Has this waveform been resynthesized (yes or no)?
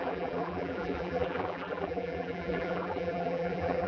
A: yes